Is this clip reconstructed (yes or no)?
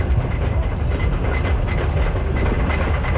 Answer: no